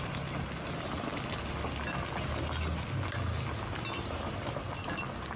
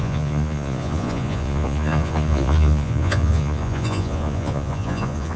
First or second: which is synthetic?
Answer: second